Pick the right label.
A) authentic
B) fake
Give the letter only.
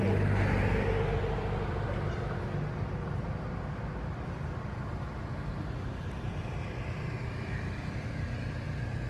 A